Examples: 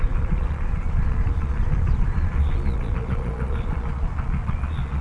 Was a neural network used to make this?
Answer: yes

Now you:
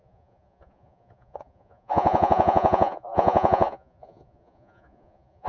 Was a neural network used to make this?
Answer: yes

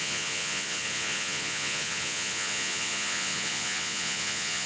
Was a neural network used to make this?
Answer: yes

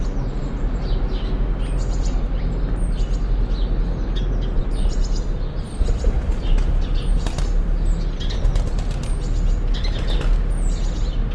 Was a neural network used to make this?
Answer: no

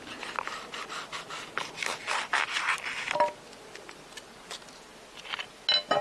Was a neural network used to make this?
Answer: no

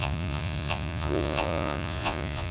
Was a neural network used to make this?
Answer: yes